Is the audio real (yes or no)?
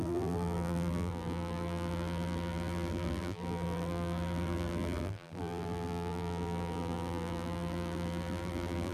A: no